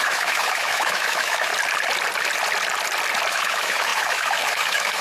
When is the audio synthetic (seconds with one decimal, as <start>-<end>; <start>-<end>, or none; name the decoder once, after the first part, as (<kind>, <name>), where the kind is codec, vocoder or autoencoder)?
0.0-1.5 (autoencoder, DAC-VAE); 3.3-5.0